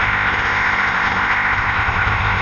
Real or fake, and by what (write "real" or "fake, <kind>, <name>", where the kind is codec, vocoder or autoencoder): fake, codec, ZipCodec